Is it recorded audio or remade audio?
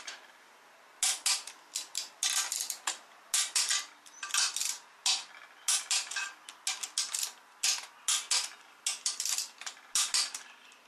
recorded